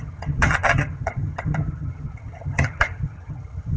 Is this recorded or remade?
remade